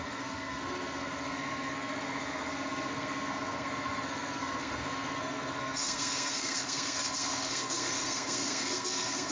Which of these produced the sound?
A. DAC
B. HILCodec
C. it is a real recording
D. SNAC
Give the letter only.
D